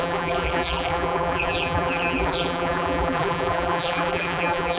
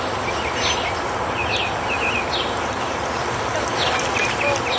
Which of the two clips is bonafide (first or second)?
second